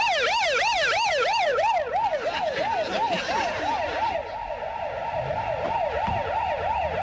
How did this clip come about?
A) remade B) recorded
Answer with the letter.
B